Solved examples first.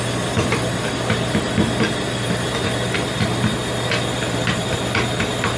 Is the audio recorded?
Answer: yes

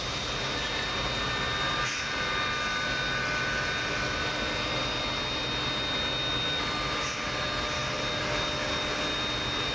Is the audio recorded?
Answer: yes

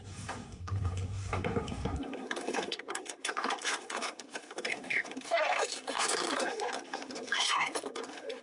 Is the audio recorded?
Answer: no